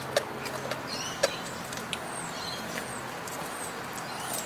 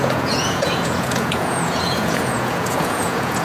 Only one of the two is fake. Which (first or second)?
second